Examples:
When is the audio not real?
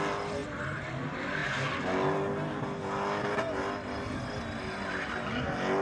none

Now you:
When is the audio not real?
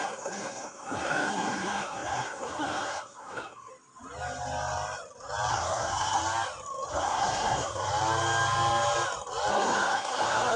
0.0-3.7 (codec, SNAC); 5.5-6.2; 6.9-7.9; 9.5-10.6